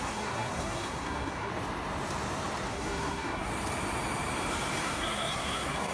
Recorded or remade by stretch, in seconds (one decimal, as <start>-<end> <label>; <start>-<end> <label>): 0.0-1.5 remade; 1.5-2.7 recorded; 2.7-3.5 remade; 3.5-4.8 recorded; 4.8-5.9 remade